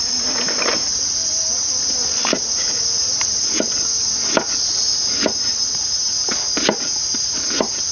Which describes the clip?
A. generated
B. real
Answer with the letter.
B